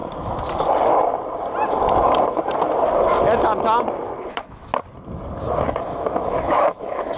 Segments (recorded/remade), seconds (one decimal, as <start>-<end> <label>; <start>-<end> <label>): 0.0-4.3 recorded; 4.3-4.7 remade; 4.7-5.8 recorded; 5.8-7.2 remade